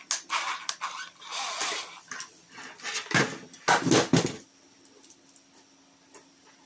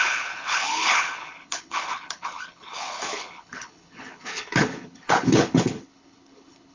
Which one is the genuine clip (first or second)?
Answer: first